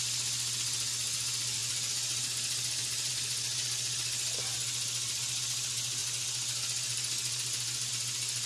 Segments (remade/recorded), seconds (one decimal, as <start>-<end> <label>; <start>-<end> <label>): 0.0-8.5 recorded